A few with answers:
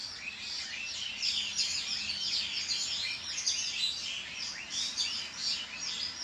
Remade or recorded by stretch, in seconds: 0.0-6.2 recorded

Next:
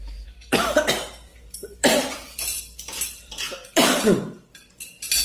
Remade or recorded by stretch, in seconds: 0.0-1.3 recorded; 1.3-2.6 remade; 2.6-3.5 recorded; 3.5-4.2 remade; 4.2-5.2 recorded

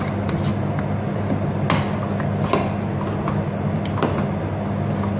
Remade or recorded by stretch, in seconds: 0.0-5.2 recorded

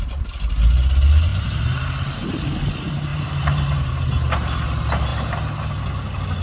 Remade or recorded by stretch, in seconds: 0.0-1.3 recorded; 1.3-2.3 remade; 2.3-3.1 recorded; 3.1-3.9 remade; 3.9-5.1 recorded; 5.1-5.9 remade; 5.9-6.4 recorded

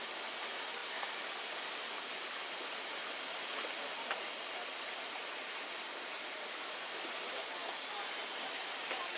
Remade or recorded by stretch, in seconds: 0.0-9.2 recorded

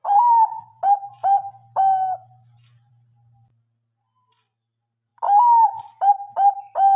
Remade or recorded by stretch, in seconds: 0.0-0.6 remade; 0.6-7.0 recorded